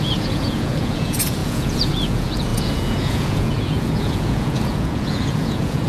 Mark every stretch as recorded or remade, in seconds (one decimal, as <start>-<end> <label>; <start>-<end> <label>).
0.0-5.9 remade